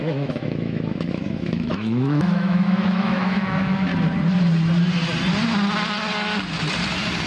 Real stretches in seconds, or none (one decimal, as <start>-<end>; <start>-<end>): 3.9-7.3